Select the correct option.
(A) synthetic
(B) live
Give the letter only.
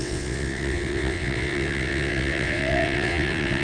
A